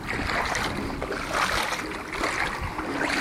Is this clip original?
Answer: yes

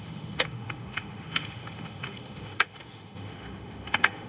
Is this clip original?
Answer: no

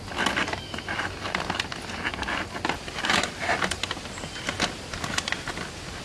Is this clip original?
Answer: yes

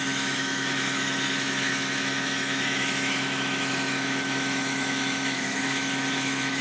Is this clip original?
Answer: no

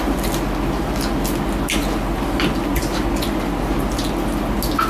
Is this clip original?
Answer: yes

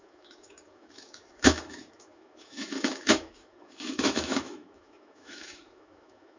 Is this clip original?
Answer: no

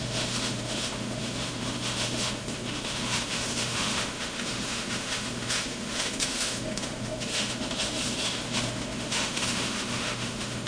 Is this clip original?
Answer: no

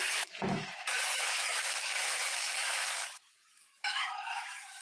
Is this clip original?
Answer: no